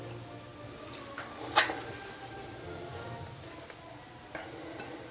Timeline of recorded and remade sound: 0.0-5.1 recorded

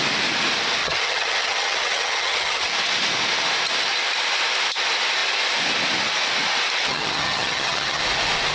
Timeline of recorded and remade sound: 0.0-0.8 recorded; 0.8-2.7 remade; 2.7-6.8 recorded; 6.8-8.0 remade; 8.0-8.5 recorded

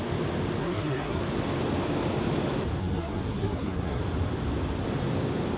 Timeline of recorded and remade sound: 0.0-0.6 recorded; 0.6-1.2 remade; 1.2-2.8 recorded; 2.8-4.0 remade; 4.0-5.6 recorded

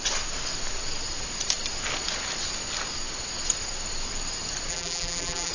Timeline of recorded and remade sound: 0.0-4.7 recorded; 4.7-5.5 remade

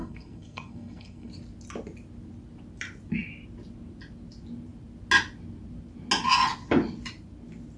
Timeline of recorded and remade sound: 0.0-1.3 remade; 1.3-7.8 recorded

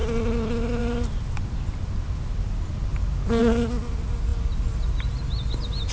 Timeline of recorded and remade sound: 0.0-5.9 recorded

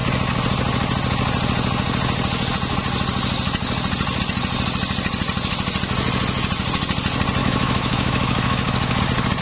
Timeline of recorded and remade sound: 0.0-7.4 recorded; 7.4-9.0 remade; 9.0-9.4 recorded

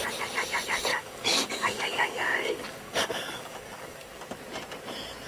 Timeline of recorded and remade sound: 0.0-0.9 recorded; 0.9-4.1 remade; 4.1-5.3 recorded